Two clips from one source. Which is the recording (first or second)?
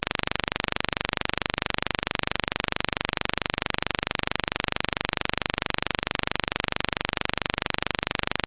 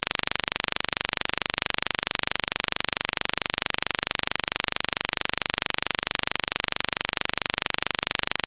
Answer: first